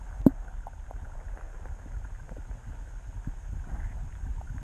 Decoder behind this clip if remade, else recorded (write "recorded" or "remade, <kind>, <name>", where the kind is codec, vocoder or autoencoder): recorded